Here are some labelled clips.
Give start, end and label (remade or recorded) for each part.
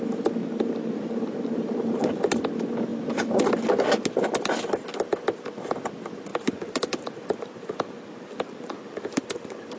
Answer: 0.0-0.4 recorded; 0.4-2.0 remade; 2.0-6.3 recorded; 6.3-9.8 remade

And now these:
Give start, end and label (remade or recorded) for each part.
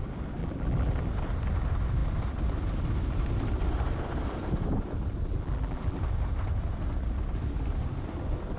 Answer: 0.0-0.4 recorded; 0.4-1.0 remade; 1.0-5.3 recorded; 5.3-6.0 remade; 6.0-8.6 recorded